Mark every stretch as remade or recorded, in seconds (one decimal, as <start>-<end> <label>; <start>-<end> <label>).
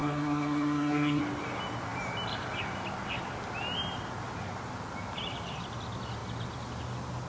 0.0-1.2 remade; 1.2-7.3 recorded